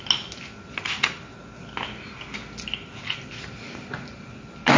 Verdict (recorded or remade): recorded